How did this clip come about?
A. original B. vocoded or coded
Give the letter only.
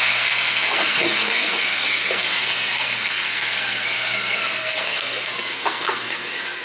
B